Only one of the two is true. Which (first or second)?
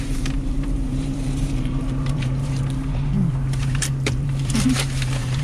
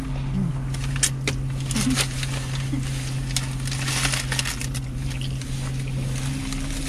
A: second